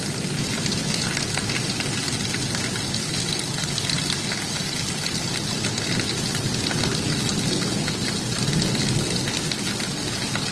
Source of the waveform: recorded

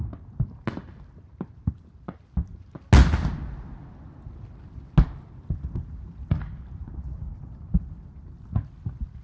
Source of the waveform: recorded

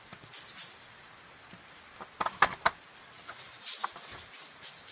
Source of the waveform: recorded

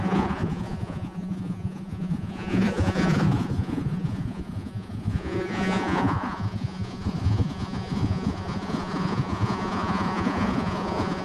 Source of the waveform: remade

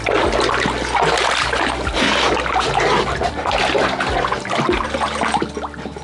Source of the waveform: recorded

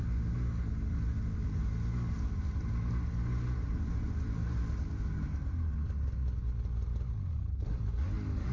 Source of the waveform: recorded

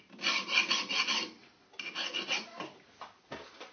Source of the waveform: recorded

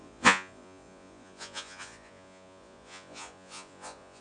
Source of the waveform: remade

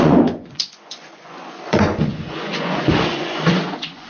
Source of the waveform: remade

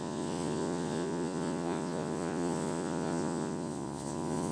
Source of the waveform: remade